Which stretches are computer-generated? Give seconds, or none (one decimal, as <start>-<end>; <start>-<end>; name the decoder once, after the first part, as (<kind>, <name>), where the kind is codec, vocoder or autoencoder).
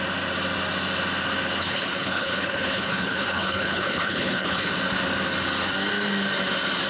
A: 1.6-4.7 (codec, HILCodec)